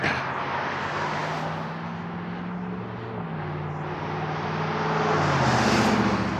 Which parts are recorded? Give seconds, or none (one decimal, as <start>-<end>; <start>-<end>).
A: 0.0-6.4